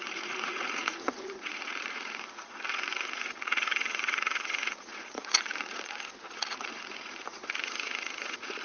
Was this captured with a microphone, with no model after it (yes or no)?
no